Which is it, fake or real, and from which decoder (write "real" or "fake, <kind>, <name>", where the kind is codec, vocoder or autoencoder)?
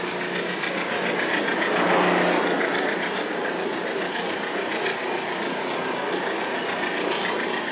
real